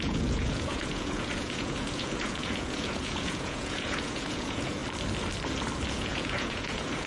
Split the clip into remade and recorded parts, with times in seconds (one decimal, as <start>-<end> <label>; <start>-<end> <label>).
0.0-4.8 remade; 4.8-5.9 recorded; 5.9-7.1 remade